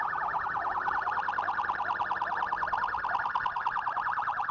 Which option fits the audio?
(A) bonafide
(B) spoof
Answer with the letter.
A